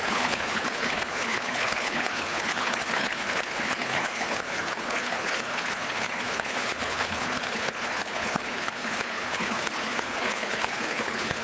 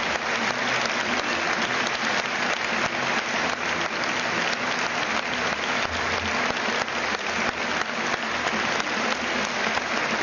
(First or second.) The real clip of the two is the second